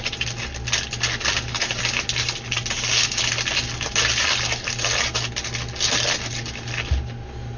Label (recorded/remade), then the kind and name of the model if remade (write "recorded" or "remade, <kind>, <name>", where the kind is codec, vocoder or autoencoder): recorded